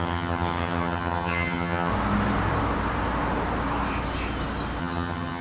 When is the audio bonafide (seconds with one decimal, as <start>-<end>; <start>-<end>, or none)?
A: 1.9-4.8